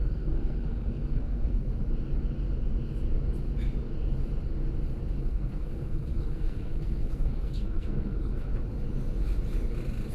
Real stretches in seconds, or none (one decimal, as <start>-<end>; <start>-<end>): 1.7-5.2; 8.5-10.1